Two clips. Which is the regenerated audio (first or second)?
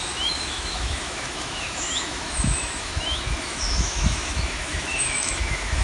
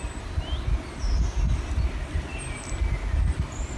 first